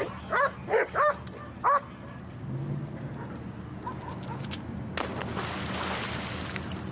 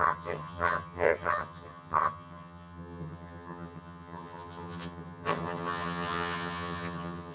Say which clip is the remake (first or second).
second